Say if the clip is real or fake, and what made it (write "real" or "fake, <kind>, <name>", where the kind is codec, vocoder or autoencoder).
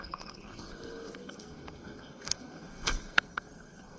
fake, codec, SNAC